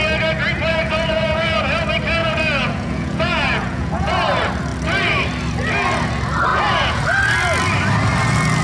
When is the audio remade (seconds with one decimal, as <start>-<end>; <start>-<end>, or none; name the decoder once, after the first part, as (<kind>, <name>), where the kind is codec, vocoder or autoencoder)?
0.7-1.6 (vocoder, Vocos); 2.2-4.1; 6.5-7.0